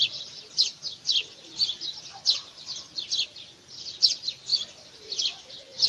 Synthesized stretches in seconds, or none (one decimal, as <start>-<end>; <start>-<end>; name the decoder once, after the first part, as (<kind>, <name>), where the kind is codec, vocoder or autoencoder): none